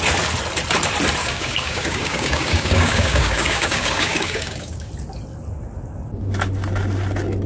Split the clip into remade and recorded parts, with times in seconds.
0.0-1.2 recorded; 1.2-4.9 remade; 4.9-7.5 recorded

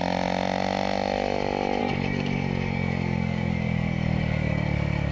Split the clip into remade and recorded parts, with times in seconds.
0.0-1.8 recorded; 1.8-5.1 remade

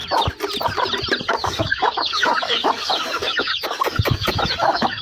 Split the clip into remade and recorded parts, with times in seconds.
0.0-1.3 recorded; 1.3-5.0 remade

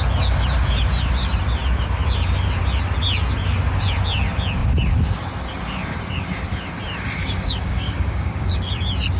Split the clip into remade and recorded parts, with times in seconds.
0.0-7.2 recorded; 7.2-8.7 remade; 8.7-9.2 recorded

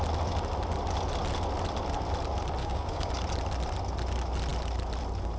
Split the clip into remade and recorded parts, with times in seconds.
0.0-2.6 recorded; 2.6-3.1 remade; 3.1-5.4 recorded